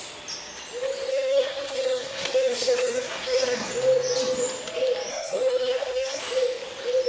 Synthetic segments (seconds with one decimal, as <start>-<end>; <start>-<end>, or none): 1.1-3.7; 5.1-6.2